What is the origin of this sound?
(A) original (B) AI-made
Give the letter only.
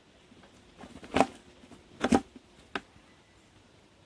A